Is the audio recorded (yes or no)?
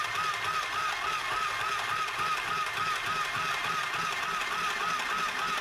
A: yes